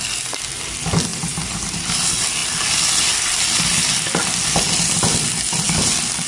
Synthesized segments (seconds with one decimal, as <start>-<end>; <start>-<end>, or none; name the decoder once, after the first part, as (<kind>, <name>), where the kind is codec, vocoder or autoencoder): 1.1-1.8 (vocoder, BigVGAN v2)